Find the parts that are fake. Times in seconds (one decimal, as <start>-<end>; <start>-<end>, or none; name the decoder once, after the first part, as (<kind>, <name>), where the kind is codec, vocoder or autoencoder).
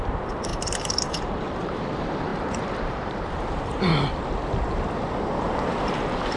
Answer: 0.0-3.9 (vocoder, BigVGAN v2); 5.4-6.4